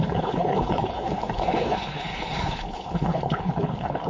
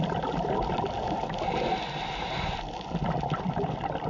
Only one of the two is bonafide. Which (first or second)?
second